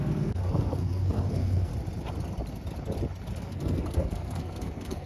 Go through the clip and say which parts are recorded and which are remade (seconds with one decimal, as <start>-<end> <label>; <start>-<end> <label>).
0.0-1.7 remade; 1.7-3.4 recorded; 3.4-5.1 remade